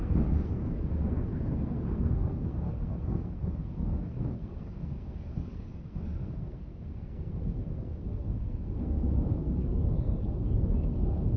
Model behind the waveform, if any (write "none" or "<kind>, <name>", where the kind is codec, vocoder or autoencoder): codec, SNAC